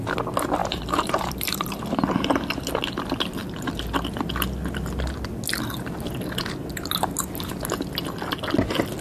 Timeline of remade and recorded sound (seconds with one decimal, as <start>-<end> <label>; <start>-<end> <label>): 0.0-0.6 recorded; 0.6-1.8 remade; 1.8-9.0 recorded